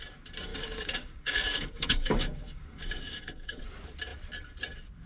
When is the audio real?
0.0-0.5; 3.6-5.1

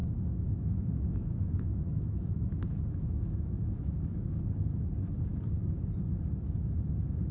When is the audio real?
4.4-7.3

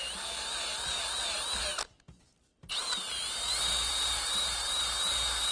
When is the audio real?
0.0-5.5

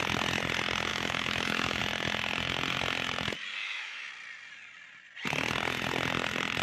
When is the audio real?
0.0-0.9; 1.8-3.6; 4.1-6.6

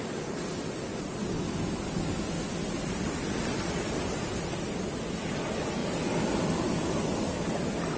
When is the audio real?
0.0-8.0